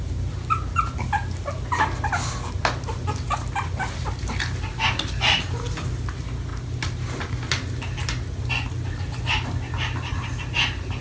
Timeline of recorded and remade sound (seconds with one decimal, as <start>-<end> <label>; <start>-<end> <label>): 0.0-11.0 recorded